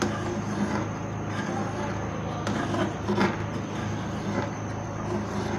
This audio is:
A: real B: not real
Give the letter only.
A